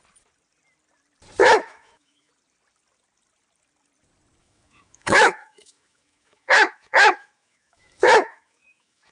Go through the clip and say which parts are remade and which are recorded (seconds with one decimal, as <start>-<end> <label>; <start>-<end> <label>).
0.0-1.4 recorded; 1.4-2.3 remade; 2.3-4.4 recorded; 4.4-9.1 remade

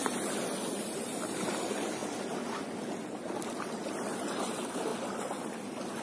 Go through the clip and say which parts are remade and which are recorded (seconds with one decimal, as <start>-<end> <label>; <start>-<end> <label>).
0.0-0.7 recorded; 0.7-2.0 remade; 2.0-4.4 recorded; 4.4-4.9 remade; 4.9-6.0 recorded

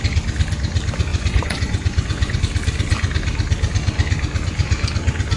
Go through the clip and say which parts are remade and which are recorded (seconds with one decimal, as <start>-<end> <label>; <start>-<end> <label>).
0.0-1.1 recorded; 1.1-2.4 remade; 2.4-5.4 recorded

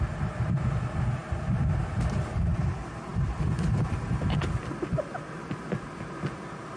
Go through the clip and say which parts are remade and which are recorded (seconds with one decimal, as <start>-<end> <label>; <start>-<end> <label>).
0.0-6.8 recorded

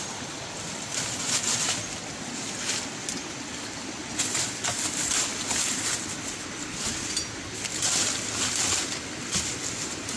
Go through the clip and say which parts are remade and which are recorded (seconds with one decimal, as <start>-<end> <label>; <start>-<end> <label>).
0.0-10.2 recorded

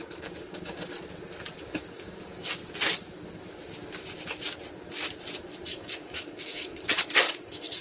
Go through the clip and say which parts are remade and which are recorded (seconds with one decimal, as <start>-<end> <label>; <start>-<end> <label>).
0.0-0.9 remade; 0.9-1.6 recorded; 1.6-2.6 remade; 2.6-5.4 recorded; 5.4-7.8 remade

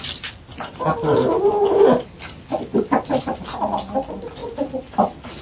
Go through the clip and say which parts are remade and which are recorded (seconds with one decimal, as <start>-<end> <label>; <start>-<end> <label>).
0.0-5.4 recorded